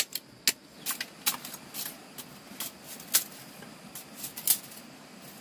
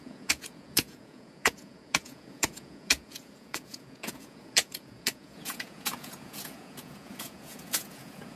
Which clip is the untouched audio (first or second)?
first